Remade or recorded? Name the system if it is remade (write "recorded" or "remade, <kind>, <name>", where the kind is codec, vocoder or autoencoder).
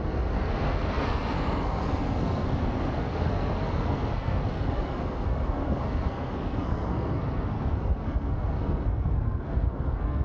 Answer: remade, codec, SNAC